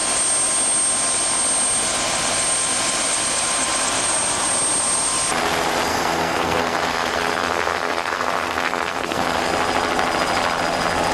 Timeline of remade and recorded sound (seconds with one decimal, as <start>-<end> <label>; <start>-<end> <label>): 0.0-5.9 recorded; 5.9-9.5 remade; 9.5-11.1 recorded